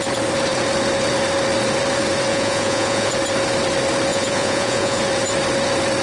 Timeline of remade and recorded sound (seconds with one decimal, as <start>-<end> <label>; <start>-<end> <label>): 0.0-2.3 recorded; 2.3-3.1 remade; 3.1-4.1 recorded; 4.1-5.0 remade; 5.0-6.0 recorded